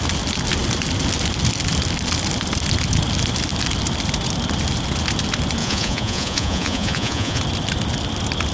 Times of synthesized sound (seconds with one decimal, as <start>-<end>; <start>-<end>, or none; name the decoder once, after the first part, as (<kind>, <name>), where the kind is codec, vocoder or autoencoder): 5.6-7.4 (vocoder, Vocos)